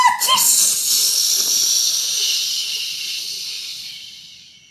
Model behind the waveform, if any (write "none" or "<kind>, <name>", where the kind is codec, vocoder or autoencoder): none